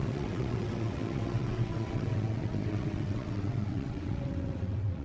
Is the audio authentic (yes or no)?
no